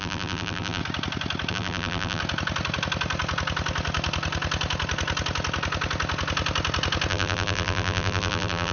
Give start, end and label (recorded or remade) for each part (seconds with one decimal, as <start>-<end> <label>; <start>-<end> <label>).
0.0-0.8 remade; 0.8-1.5 recorded; 1.5-2.2 remade; 2.2-7.1 recorded; 7.1-8.7 remade